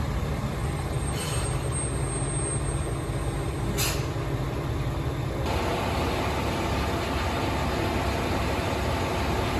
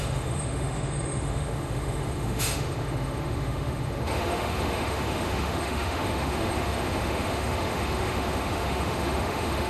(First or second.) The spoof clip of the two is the second